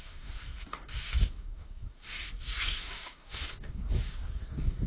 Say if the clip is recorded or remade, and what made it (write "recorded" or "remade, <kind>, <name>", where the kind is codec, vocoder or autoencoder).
remade, codec, DAC